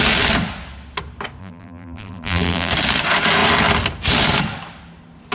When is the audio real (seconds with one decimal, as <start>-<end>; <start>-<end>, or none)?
0.0-1.4; 2.7-5.3